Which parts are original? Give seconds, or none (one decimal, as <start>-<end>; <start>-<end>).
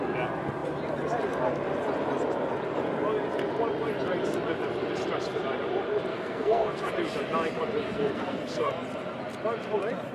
0.0-6.1; 6.9-7.8; 8.7-10.1